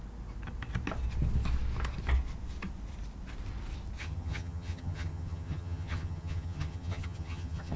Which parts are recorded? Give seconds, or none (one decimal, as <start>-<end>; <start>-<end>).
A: 0.0-4.0